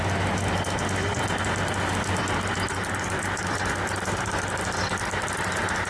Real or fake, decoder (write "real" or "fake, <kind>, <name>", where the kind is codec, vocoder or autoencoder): real